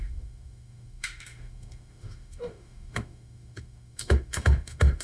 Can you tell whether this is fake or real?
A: fake